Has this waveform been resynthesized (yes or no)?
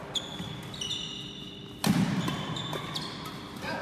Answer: no